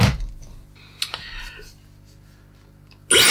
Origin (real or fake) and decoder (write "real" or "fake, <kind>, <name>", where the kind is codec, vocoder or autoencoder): real